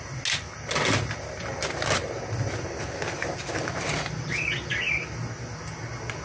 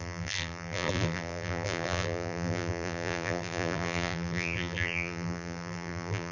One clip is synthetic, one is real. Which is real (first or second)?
first